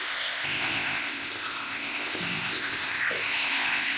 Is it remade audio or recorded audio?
remade